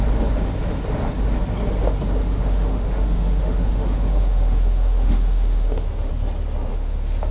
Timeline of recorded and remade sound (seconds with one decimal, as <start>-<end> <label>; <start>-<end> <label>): 0.0-2.3 recorded; 2.3-6.1 remade; 6.1-6.7 recorded; 6.7-7.3 remade